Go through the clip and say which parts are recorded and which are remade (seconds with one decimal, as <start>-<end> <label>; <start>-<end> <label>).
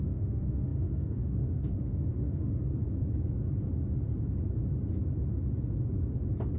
0.0-2.6 remade; 2.6-6.6 recorded